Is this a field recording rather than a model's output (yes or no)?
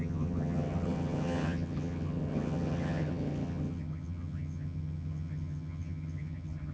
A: no